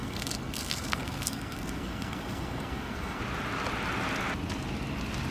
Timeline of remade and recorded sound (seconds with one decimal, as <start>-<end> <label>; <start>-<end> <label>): 0.0-3.2 remade; 3.2-5.3 recorded